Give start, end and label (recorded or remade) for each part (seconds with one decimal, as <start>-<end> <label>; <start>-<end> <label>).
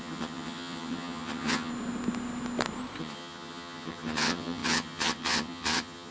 0.0-1.7 remade; 1.7-3.0 recorded; 3.0-6.1 remade